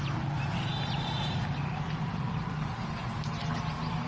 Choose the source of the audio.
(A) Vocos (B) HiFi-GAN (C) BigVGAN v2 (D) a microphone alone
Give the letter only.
C